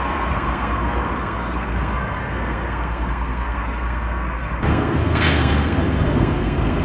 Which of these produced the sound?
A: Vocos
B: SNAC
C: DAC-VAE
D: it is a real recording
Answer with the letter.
B